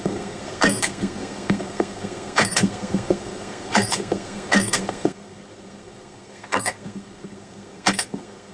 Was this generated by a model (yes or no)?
yes